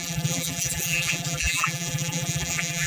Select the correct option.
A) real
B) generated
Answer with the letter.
B